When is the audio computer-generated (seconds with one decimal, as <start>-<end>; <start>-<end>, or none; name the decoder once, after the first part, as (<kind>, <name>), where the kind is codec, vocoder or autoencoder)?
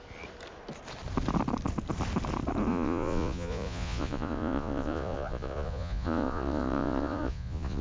2.7-7.8 (vocoder, Vocos)